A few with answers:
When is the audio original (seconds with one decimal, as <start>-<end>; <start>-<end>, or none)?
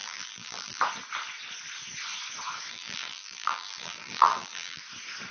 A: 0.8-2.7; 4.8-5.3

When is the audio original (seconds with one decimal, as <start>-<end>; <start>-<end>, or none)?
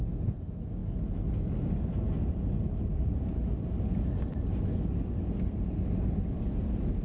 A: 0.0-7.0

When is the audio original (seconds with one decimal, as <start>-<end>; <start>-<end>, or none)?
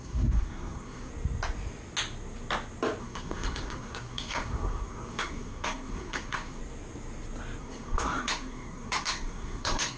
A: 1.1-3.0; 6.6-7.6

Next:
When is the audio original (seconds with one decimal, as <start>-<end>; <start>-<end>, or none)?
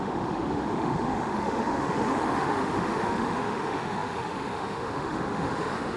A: none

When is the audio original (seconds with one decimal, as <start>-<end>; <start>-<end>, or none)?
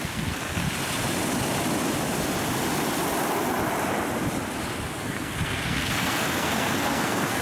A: 0.6-5.0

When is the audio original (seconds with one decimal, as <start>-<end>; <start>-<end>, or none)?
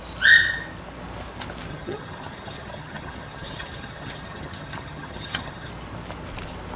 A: 0.0-1.7; 5.7-6.8